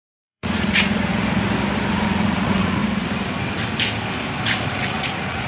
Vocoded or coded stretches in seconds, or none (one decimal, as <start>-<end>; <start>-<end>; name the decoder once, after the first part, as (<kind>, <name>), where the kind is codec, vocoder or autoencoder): 0.0-1.1 (vocoder, Vocos); 1.9-2.8; 4.6-5.5